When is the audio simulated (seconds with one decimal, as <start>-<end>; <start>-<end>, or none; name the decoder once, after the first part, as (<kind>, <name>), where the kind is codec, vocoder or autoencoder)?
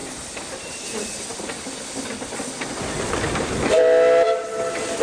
none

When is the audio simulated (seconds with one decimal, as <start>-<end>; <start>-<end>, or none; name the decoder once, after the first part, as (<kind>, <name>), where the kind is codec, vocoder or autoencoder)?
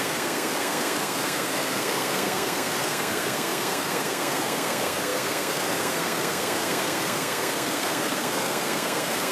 0.0-9.3 (codec, SNAC)